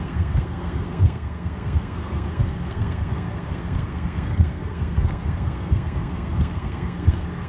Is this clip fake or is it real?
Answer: fake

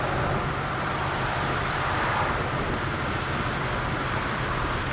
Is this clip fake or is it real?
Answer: real